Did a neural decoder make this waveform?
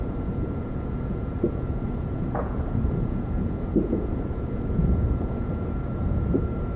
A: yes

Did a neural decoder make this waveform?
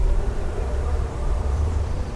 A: yes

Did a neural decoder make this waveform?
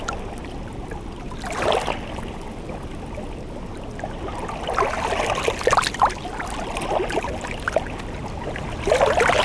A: no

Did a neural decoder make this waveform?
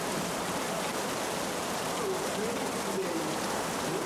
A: no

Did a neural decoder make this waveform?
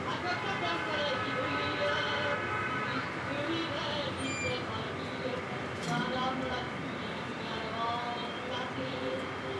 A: no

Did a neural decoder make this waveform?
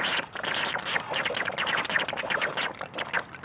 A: no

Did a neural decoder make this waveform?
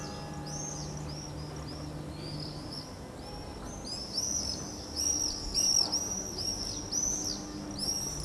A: no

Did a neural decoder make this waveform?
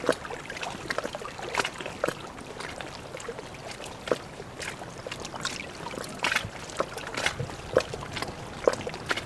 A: no